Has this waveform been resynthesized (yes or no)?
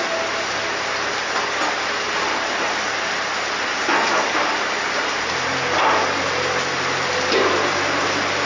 no